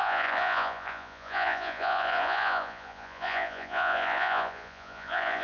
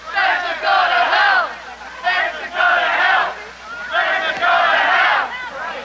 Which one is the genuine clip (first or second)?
second